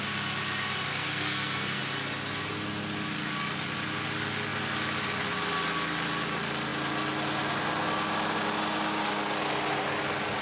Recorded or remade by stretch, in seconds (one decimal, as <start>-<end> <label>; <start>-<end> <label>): 0.0-0.9 recorded; 0.9-1.8 remade; 1.8-10.4 recorded